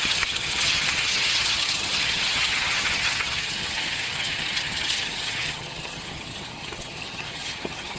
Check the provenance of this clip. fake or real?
fake